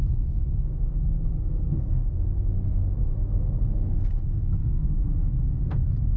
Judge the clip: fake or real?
fake